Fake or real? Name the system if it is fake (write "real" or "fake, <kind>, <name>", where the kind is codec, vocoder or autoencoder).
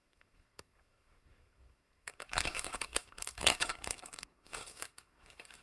fake, codec, SNAC